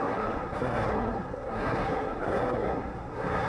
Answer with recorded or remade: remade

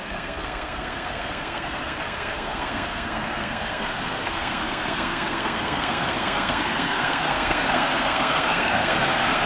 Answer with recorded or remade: remade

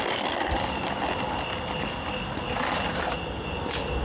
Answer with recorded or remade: recorded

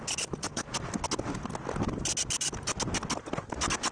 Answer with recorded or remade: recorded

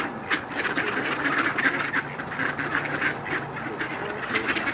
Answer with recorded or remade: recorded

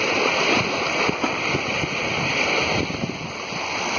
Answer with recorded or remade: recorded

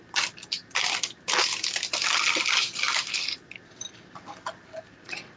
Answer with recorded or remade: recorded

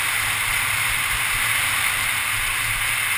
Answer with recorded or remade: recorded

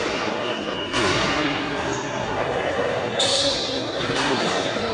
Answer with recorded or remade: remade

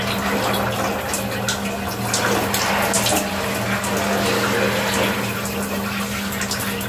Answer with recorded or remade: recorded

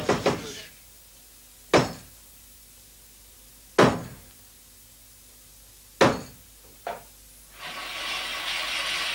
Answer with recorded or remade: recorded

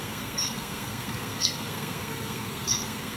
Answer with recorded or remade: remade